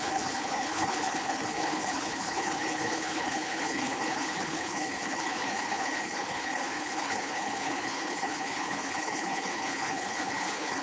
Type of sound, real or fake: fake